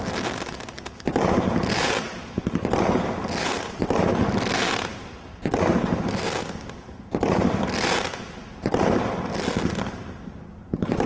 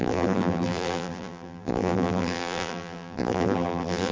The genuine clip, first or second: first